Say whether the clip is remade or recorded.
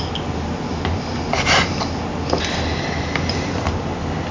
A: recorded